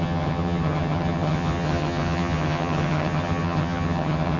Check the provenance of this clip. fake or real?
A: fake